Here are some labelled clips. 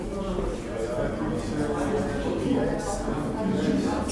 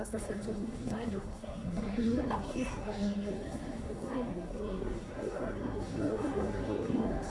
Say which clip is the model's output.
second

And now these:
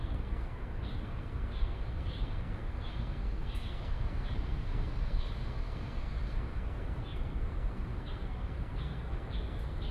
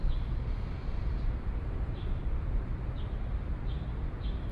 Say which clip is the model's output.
first